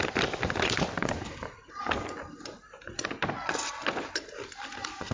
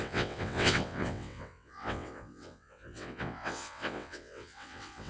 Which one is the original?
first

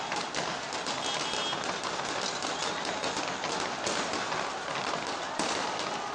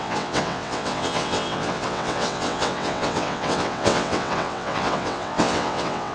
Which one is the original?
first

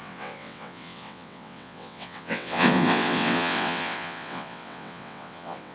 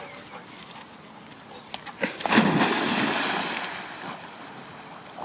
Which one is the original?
second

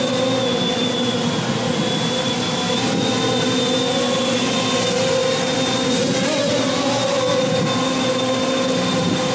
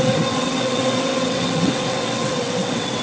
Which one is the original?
first